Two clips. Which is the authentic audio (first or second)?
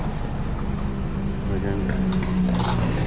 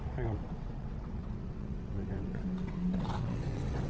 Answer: first